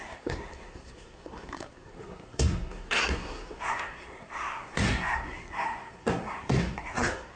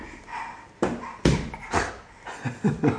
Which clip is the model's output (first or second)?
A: first